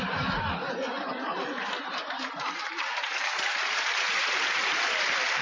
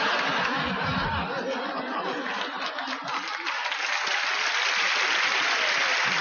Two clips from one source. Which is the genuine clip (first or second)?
second